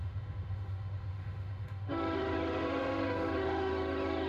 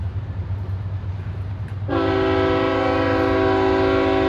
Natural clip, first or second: second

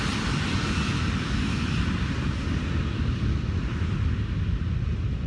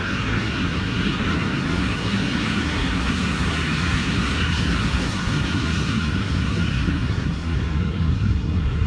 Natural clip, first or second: first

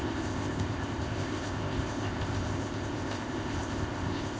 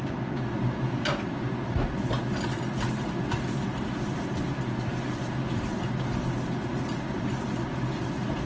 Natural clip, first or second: second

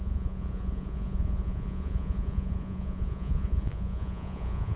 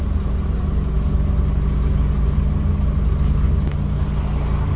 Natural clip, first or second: second